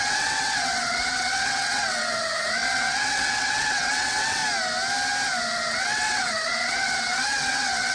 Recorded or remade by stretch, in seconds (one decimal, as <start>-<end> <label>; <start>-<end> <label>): 0.0-4.4 remade; 4.4-5.7 recorded; 5.7-7.9 remade